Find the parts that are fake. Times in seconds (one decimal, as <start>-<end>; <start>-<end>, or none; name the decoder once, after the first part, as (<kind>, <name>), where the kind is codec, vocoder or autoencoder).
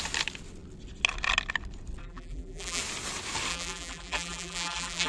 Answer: 2.0-2.8 (vocoder, BigVGAN v2); 3.5-5.1